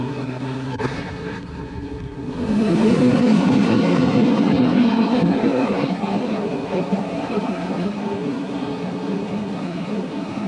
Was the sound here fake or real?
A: fake